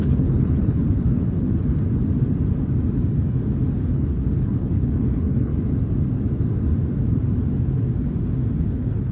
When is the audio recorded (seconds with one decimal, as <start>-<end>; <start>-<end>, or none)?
1.7-3.8; 5.5-8.6